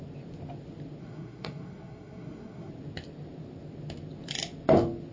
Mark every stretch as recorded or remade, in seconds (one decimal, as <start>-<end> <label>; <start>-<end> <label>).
0.0-1.0 recorded; 1.0-2.7 remade; 2.7-5.1 recorded